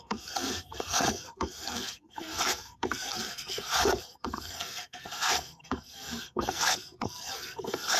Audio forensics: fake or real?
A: fake